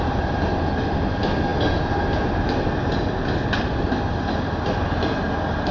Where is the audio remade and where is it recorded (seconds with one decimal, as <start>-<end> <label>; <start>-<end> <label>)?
0.0-5.7 recorded